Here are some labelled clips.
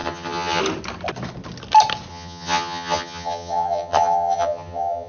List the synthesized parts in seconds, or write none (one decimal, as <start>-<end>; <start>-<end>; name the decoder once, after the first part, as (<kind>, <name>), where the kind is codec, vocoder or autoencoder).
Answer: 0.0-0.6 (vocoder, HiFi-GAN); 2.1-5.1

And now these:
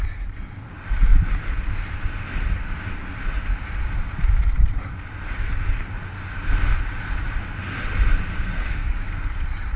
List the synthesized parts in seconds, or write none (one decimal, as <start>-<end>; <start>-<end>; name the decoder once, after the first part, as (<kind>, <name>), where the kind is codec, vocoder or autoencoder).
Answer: 8.3-8.9 (codec, SNAC)

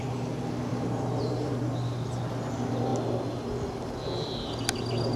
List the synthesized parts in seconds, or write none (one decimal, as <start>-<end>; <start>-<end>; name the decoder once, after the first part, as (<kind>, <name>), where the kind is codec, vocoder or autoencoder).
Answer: 0.7-1.5 (vocoder, BigVGAN v2)